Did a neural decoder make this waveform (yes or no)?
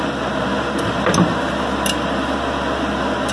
no